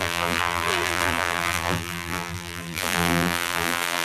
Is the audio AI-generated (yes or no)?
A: yes